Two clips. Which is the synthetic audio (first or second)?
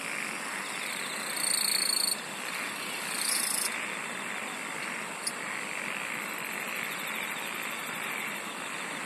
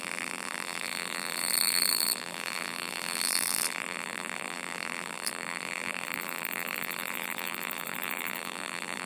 second